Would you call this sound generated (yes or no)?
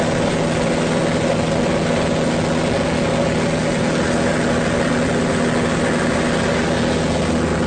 no